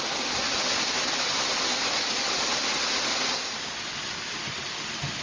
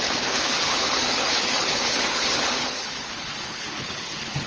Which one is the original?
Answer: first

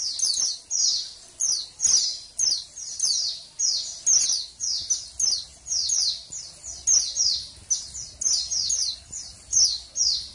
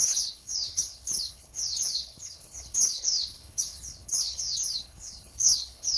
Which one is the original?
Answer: first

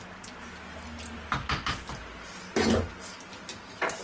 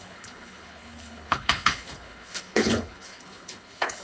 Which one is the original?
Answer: first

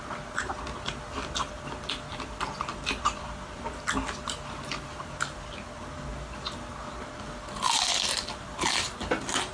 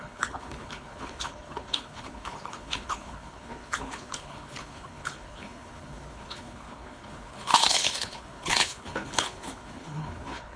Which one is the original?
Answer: first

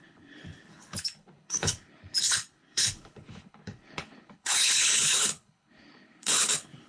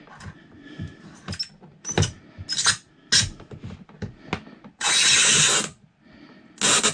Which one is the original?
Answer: second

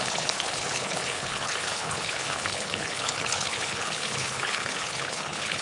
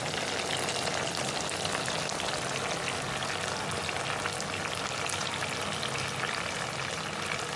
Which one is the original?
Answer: second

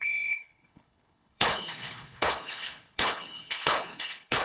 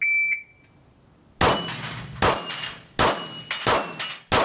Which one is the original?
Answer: second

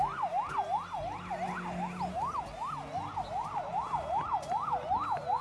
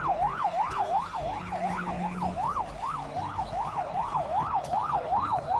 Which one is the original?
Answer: first